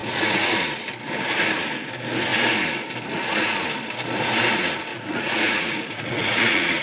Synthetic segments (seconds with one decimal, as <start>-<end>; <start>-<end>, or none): 0.0-0.5; 4.9-6.8